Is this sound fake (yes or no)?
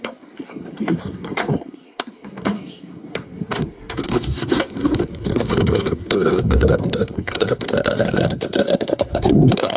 yes